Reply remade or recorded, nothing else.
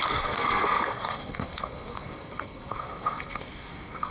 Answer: remade